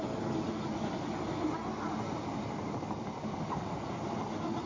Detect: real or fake real